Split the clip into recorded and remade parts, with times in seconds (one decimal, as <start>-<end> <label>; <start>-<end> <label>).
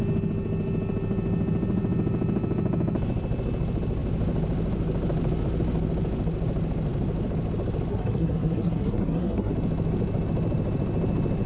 0.0-7.9 recorded; 7.9-9.5 remade; 9.5-11.5 recorded